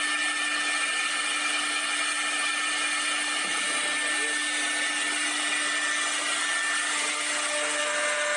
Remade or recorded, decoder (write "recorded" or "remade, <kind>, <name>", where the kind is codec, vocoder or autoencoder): recorded